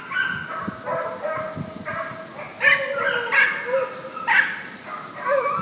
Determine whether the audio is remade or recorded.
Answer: recorded